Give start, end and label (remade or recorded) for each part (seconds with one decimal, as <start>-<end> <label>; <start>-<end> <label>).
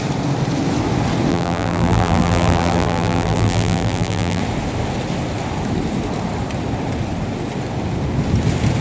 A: 0.0-1.3 recorded; 1.3-4.4 remade; 4.4-8.8 recorded